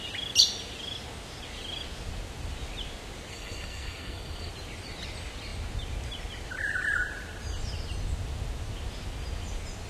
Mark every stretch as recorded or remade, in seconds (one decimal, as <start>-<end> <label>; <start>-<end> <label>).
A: 0.0-3.3 recorded; 3.3-4.5 remade; 4.5-9.9 recorded